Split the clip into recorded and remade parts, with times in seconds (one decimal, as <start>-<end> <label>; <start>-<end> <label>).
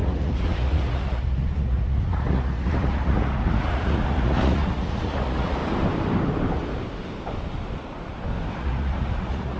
0.0-5.6 remade; 5.6-8.6 recorded; 8.6-9.6 remade